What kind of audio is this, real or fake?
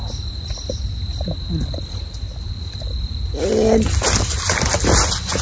real